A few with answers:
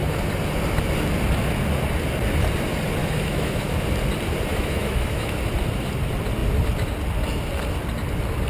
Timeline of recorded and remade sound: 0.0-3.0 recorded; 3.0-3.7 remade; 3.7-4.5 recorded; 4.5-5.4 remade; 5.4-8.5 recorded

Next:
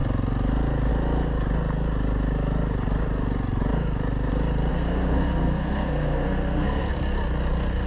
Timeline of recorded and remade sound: 0.0-4.7 recorded; 4.7-6.9 remade; 6.9-7.9 recorded

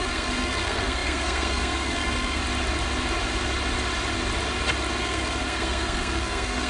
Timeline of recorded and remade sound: 0.0-2.4 remade; 2.4-5.0 recorded; 5.0-6.7 remade

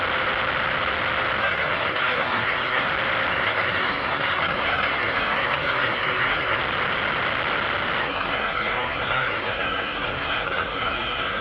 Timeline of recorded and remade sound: 0.0-1.4 recorded; 1.4-2.9 remade; 2.9-3.3 recorded; 3.3-6.6 remade; 6.6-8.0 recorded; 8.0-11.4 remade

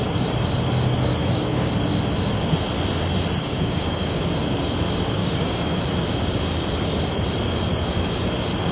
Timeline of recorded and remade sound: 0.0-1.2 recorded; 1.2-1.7 remade; 1.7-3.4 recorded; 3.4-4.2 remade; 4.2-5.2 recorded; 5.2-5.8 remade; 5.8-8.7 recorded

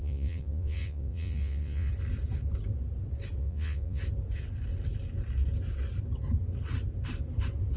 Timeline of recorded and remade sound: 0.0-1.9 remade; 1.9-3.4 recorded; 3.4-4.0 remade; 4.0-7.8 recorded

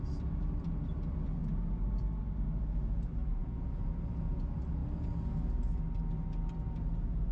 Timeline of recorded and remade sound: 0.0-3.4 recorded; 3.4-3.9 remade; 3.9-7.3 recorded

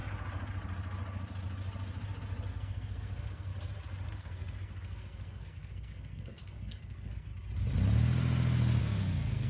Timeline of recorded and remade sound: 0.0-2.5 recorded; 2.5-3.5 remade; 3.5-4.2 recorded; 4.2-7.3 remade; 7.3-8.8 recorded; 8.8-9.5 remade